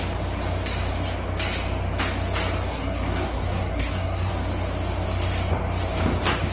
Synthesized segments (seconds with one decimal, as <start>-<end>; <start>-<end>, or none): 2.7-4.3